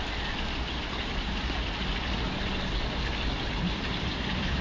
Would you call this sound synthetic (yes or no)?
no